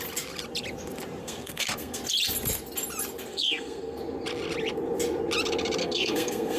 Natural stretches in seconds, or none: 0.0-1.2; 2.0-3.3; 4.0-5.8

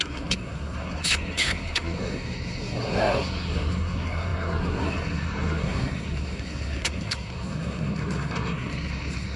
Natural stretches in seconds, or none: none

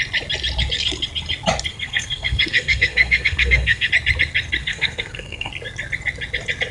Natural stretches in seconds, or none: 0.0-1.7; 3.9-4.6; 5.5-6.7

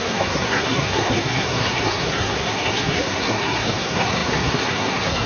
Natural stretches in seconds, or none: none

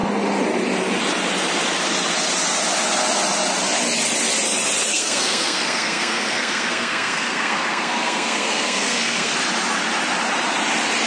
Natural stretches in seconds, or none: 0.0-4.9; 9.3-11.1

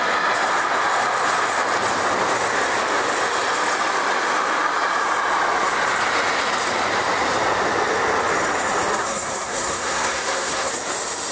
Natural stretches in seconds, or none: 0.0-8.9; 10.7-11.3

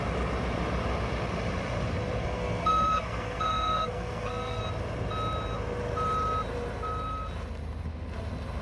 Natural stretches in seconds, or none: 0.0-2.2; 4.6-8.6